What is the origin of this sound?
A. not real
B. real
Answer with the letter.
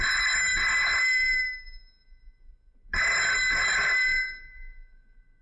B